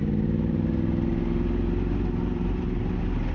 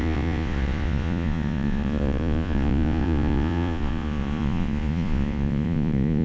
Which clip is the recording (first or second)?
first